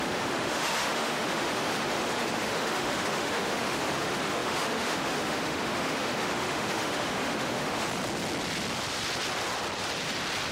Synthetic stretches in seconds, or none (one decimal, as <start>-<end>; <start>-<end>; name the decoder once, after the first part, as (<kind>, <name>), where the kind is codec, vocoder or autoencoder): 0.0-7.9 (autoencoder, DAC-VAE)